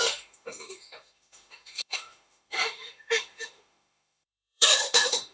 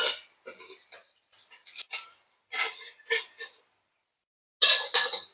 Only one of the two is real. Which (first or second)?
second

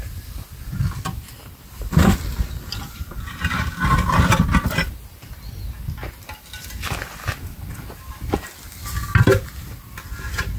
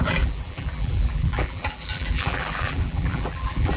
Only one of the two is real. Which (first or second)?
first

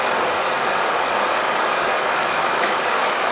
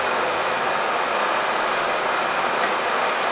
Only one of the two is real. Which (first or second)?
second